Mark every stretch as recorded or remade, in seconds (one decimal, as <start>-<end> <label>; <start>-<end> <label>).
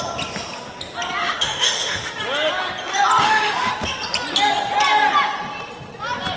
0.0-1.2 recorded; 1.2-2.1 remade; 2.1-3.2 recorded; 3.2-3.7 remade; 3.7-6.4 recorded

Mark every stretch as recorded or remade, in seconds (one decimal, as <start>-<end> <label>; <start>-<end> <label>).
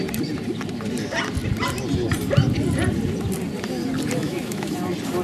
0.0-4.2 recorded; 4.2-4.7 remade; 4.7-5.2 recorded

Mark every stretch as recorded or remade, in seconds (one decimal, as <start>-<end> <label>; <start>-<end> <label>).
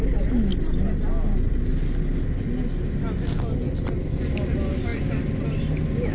0.0-6.1 recorded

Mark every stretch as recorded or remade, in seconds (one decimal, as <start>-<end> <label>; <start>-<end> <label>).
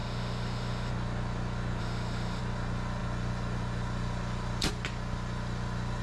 0.0-0.9 remade; 0.9-1.8 recorded; 1.8-2.4 remade; 2.4-6.0 recorded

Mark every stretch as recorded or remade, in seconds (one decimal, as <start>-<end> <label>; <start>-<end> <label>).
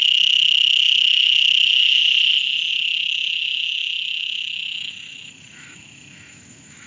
0.0-2.0 remade; 2.0-2.7 recorded; 2.7-6.9 remade